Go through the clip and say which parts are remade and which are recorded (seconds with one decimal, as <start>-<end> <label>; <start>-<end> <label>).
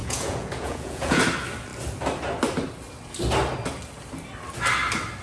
0.0-1.2 remade; 1.2-5.2 recorded